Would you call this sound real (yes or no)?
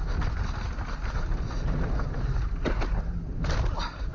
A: yes